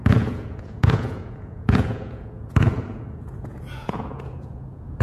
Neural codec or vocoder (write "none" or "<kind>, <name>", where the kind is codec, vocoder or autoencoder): vocoder, Vocos